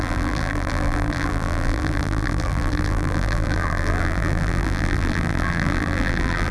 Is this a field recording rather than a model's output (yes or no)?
no